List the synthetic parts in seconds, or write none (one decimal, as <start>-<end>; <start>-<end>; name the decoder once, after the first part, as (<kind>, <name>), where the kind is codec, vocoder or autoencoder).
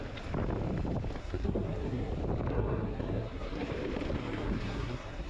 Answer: 1.2-2.1 (codec, SNAC); 2.5-3.7; 4.2-5.3